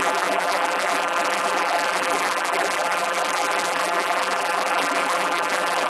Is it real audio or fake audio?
fake